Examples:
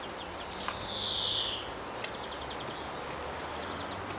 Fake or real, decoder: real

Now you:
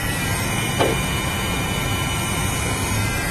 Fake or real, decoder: fake, vocoder, BigVGAN v2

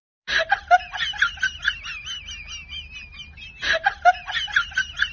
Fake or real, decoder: real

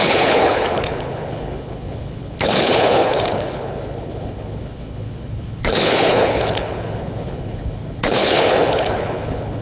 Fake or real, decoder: fake, codec, HILCodec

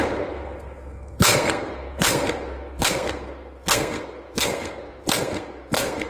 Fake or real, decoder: fake, codec, SNAC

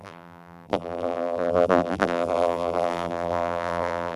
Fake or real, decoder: fake, vocoder, BigVGAN v2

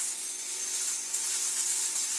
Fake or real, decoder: fake, vocoder, Vocos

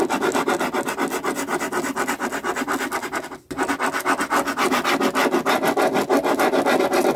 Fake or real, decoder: real